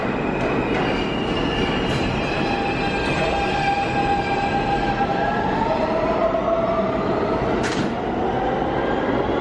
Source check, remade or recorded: recorded